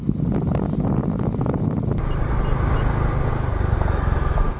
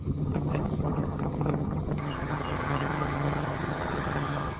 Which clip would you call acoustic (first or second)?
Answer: first